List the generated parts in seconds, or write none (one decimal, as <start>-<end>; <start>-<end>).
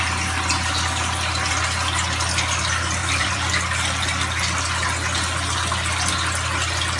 3.0-3.5